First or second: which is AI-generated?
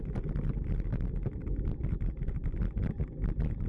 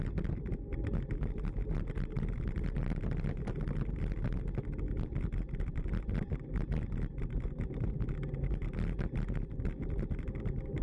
first